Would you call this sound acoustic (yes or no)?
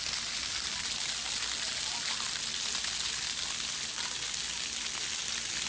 yes